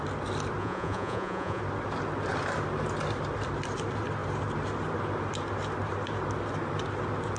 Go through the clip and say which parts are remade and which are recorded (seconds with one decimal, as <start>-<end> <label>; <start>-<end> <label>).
0.0-0.6 recorded; 0.6-1.6 remade; 1.6-7.4 recorded